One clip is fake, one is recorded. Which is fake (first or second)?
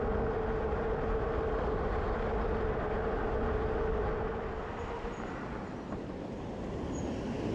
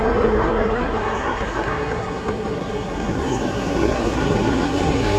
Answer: second